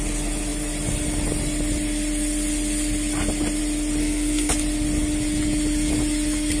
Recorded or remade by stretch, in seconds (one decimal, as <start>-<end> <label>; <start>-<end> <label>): 0.0-4.0 recorded; 4.0-4.5 remade; 4.5-6.6 recorded

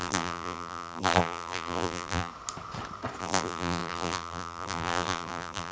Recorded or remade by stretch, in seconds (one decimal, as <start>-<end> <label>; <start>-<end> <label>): 0.0-2.3 remade; 2.3-3.2 recorded; 3.2-5.7 remade

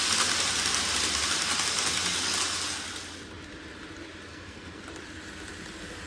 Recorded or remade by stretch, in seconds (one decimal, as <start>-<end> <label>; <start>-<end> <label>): 0.0-4.3 recorded; 4.3-4.8 remade; 4.8-6.1 recorded

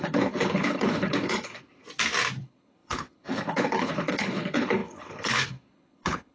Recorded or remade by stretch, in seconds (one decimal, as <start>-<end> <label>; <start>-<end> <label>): 0.0-1.8 remade; 1.8-2.4 recorded; 2.4-6.3 remade

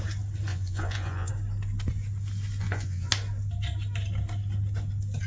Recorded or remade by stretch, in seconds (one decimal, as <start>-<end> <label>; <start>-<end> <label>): 0.0-0.5 recorded; 0.5-1.3 remade; 1.3-2.6 recorded; 2.6-3.1 remade; 3.1-5.3 recorded

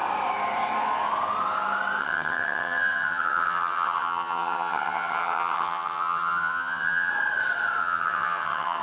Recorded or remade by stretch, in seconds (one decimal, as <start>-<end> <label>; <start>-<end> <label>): 0.0-2.0 recorded; 2.0-7.1 remade; 7.1-7.8 recorded; 7.8-8.8 remade

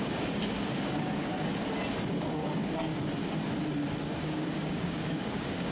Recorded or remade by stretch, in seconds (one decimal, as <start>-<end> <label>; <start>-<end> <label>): 0.0-1.3 remade; 1.3-2.1 recorded; 2.1-2.6 remade; 2.6-4.2 recorded; 4.2-5.7 remade